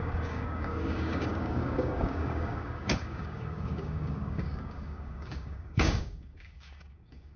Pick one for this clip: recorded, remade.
remade